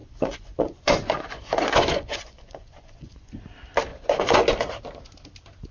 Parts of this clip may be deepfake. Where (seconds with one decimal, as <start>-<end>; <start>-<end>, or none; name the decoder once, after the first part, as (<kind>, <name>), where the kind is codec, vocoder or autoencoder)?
0.0-3.4 (vocoder, Vocos); 3.9-4.4